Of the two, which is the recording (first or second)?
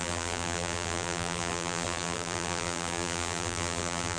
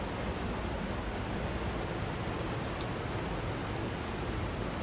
second